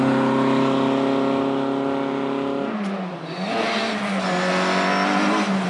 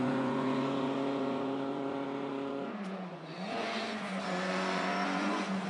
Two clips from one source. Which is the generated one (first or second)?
second